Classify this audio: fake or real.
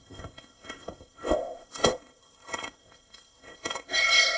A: fake